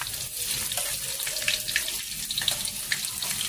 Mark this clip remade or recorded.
recorded